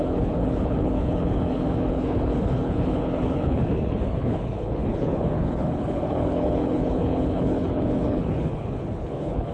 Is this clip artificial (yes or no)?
yes